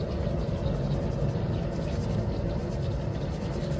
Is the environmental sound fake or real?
real